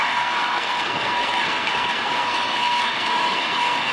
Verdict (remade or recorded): remade